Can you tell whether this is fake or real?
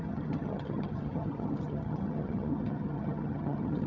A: fake